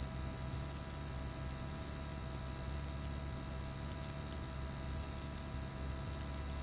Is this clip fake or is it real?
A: real